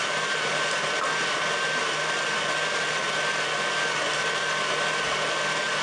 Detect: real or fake real